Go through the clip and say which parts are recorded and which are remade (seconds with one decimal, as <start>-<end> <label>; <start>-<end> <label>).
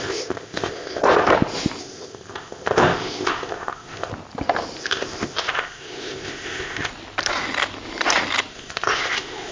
0.0-1.3 remade; 1.3-1.8 recorded; 1.8-4.1 remade; 4.1-4.8 recorded; 4.8-6.9 remade; 6.9-8.5 recorded; 8.5-9.5 remade